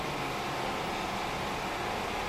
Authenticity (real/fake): real